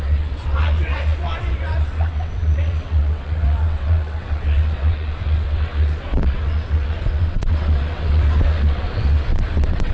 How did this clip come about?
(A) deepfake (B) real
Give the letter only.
A